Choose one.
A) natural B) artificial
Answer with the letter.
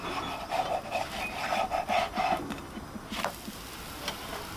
A